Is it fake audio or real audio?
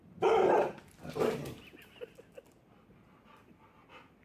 real